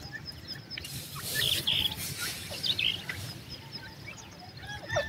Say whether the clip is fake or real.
fake